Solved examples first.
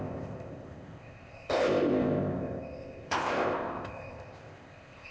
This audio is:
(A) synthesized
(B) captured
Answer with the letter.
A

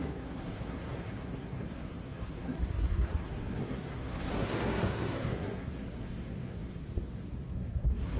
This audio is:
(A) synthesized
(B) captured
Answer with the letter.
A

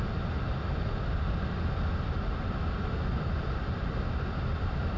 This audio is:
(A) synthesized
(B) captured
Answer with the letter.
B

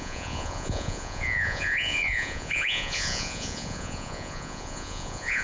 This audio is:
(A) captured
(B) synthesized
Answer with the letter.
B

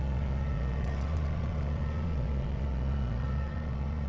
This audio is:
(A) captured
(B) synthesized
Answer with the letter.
B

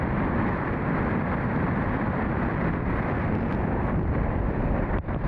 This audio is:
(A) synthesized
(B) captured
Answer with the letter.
A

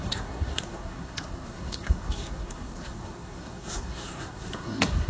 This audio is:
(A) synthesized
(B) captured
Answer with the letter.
A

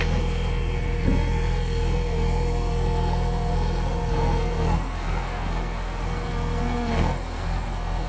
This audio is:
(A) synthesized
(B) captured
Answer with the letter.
A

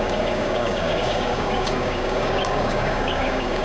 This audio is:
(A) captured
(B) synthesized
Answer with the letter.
B